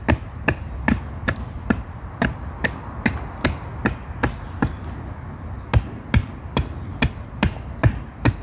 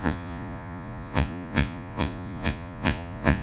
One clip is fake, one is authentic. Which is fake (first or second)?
second